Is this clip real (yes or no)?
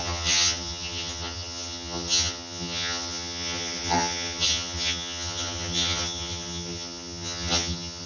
no